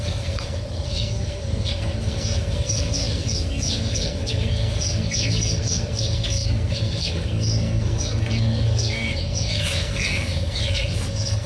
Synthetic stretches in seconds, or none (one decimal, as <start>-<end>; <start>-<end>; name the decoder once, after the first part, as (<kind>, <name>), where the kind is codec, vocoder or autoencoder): 0.0-11.5 (codec, SNAC)